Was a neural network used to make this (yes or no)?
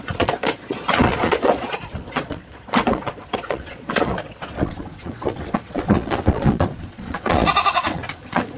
yes